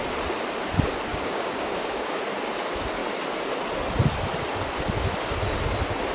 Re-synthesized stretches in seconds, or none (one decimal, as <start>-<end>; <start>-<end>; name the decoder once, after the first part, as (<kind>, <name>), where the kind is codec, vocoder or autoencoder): 1.1-2.2 (codec, DAC)